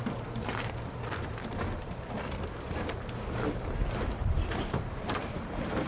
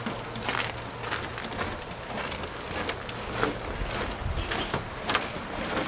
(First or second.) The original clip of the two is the second